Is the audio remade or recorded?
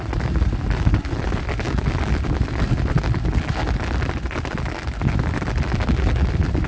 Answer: recorded